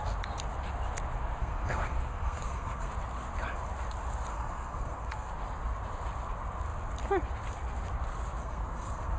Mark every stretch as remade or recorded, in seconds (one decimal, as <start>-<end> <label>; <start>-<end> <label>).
0.0-1.4 recorded; 1.4-2.9 remade; 2.9-4.3 recorded; 4.3-5.3 remade; 5.3-8.4 recorded; 8.4-9.2 remade